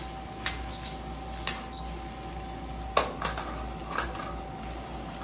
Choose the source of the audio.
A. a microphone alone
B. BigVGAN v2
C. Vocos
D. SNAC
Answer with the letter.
A